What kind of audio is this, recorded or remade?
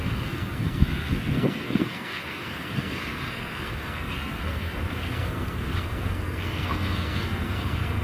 remade